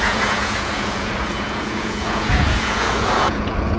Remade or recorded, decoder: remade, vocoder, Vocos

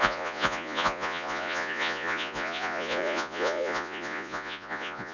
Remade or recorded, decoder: remade, vocoder, Vocos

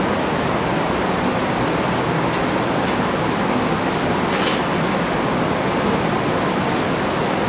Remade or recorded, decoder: recorded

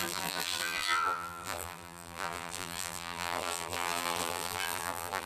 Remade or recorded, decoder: remade, vocoder, BigVGAN v2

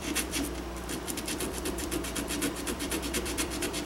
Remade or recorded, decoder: remade, vocoder, BigVGAN v2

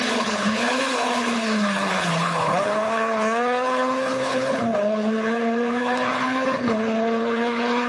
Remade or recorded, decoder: remade, codec, HILCodec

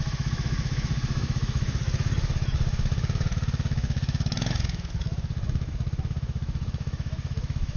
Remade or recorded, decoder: remade, autoencoder, DAC-VAE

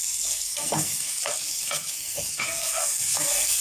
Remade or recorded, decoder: remade, codec, SNAC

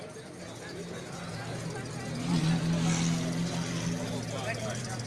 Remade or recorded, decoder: recorded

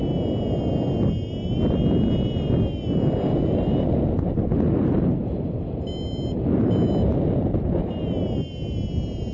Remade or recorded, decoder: recorded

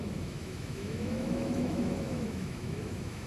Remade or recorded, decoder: remade, autoencoder, DAC-VAE